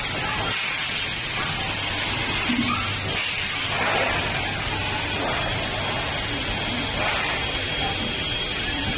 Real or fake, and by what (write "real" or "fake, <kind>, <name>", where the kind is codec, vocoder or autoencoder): real